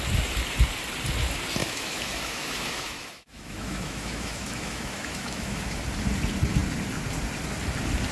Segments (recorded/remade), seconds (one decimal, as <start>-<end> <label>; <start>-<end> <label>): 0.0-1.6 recorded; 1.6-5.8 remade; 5.8-8.1 recorded